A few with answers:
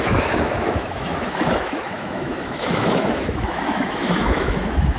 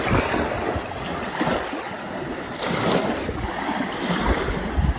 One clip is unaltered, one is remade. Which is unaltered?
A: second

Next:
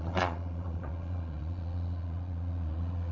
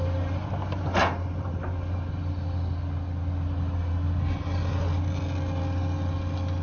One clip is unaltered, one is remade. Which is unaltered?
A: second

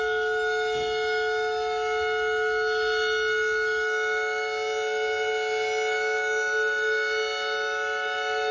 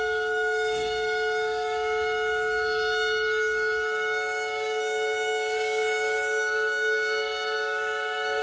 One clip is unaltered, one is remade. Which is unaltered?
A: first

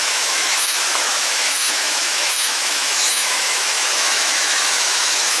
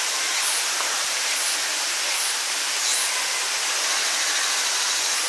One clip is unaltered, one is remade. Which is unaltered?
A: second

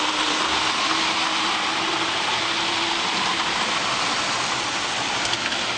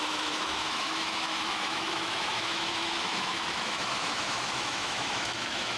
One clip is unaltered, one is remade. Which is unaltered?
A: first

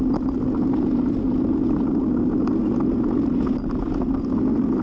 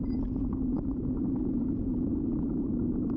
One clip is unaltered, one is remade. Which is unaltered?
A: first